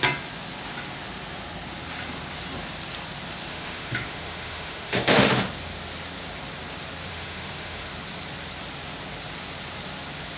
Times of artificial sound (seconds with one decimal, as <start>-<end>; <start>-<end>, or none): 3.5-5.4; 7.1-7.9